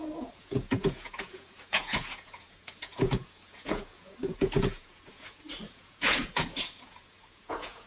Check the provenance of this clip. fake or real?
fake